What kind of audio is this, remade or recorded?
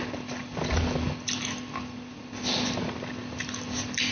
recorded